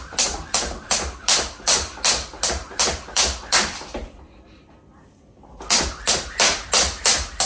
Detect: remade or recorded recorded